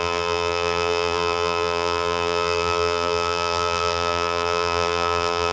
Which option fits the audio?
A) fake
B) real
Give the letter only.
A